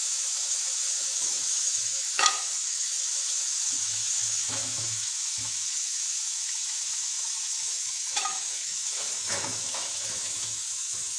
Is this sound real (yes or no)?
no